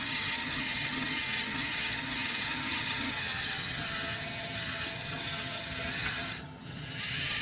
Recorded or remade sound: remade